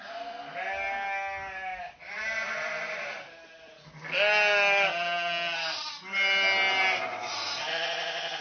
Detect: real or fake real